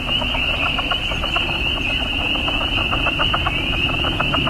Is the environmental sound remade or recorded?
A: recorded